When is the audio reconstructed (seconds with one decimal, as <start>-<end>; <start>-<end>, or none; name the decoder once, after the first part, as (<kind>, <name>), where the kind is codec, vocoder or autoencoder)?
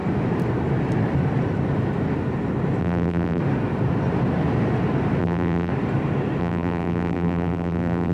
2.8-3.4 (vocoder, BigVGAN v2); 5.2-5.7; 6.4-8.1